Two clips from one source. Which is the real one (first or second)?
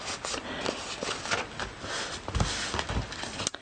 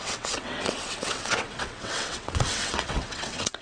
first